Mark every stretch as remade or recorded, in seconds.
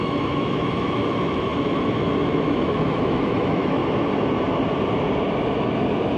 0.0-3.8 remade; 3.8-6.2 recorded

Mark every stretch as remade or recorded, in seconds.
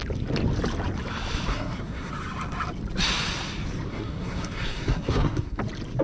0.0-1.5 recorded; 1.5-2.1 remade; 2.1-3.9 recorded; 3.9-5.6 remade; 5.6-6.0 recorded